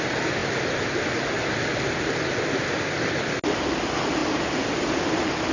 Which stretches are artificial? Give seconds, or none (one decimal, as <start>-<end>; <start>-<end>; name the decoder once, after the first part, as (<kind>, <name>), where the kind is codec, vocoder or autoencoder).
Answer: none